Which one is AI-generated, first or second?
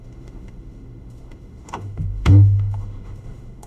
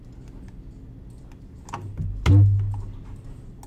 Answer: first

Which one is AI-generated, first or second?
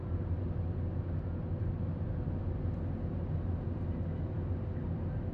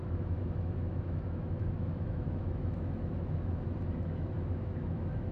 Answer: second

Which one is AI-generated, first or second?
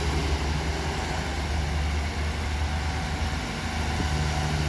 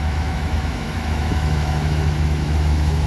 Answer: second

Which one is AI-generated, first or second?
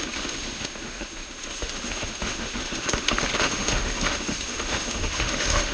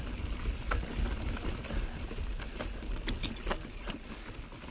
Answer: first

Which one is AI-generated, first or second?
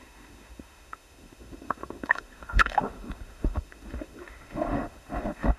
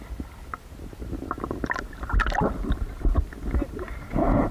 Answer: first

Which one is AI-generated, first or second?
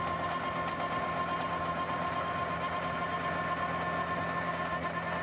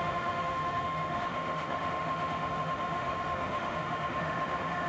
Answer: second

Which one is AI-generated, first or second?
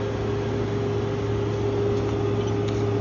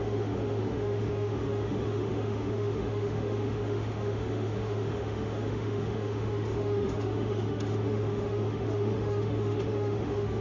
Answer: second